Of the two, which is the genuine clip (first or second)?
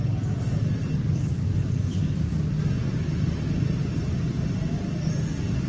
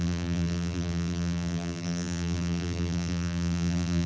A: first